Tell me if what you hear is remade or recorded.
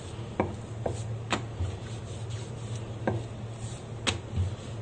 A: recorded